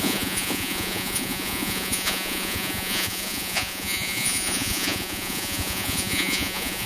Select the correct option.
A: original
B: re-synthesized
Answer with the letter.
B